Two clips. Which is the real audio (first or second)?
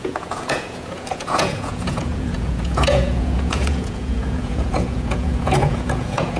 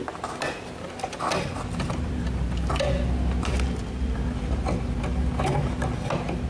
second